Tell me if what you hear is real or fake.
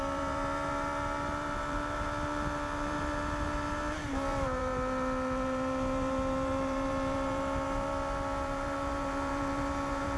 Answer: fake